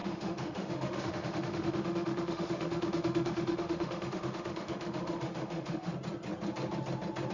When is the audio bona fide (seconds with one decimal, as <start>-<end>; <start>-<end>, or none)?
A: 5.9-7.3